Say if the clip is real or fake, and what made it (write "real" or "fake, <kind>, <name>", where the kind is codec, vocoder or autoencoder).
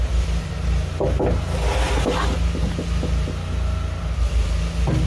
real